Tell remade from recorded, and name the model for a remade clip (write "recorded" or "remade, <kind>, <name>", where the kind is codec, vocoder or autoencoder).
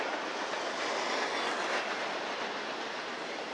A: recorded